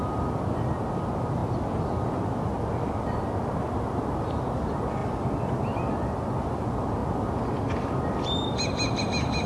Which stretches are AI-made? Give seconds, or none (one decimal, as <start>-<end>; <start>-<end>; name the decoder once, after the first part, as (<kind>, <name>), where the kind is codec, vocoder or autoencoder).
none

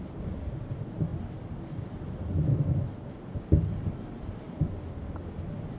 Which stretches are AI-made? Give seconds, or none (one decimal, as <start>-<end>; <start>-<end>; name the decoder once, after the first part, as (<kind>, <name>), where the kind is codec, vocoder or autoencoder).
none

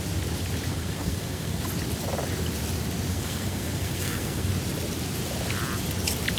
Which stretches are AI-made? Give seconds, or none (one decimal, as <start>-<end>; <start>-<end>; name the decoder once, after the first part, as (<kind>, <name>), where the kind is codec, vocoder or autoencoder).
0.7-1.6 (codec, SNAC); 3.1-4.5